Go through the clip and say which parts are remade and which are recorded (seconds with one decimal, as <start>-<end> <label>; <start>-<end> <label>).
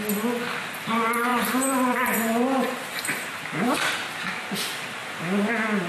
0.0-1.3 recorded; 1.3-3.4 remade; 3.4-5.0 recorded; 5.0-5.5 remade; 5.5-5.9 recorded